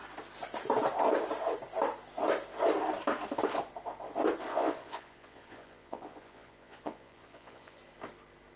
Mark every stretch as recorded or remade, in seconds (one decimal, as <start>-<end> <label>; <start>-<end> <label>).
0.0-4.5 recorded; 4.5-7.8 remade; 7.8-8.6 recorded